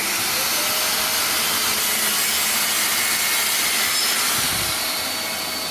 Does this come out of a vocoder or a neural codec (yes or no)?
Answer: no